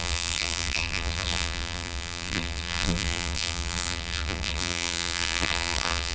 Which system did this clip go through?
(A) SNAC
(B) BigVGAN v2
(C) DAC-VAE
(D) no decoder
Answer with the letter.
B